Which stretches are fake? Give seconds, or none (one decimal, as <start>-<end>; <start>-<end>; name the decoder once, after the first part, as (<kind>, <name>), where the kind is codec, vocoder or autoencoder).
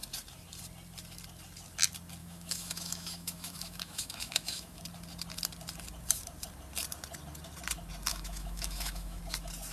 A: 2.2-4.8 (autoencoder, DAC-VAE); 8.1-9.2